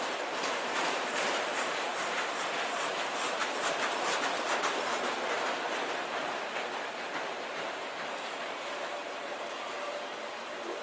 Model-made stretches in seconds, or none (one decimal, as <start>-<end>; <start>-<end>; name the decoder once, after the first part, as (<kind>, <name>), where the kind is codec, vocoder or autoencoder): 0.0-1.9 (vocoder, BigVGAN v2); 4.7-10.8